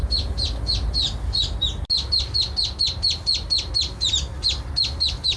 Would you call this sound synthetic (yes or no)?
no